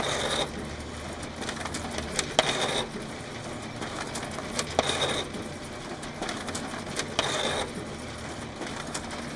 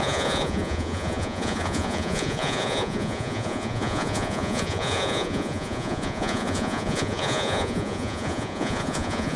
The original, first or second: first